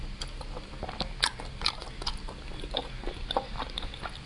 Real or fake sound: real